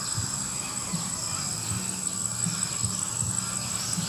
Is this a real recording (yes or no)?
yes